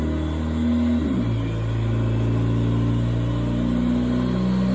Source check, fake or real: real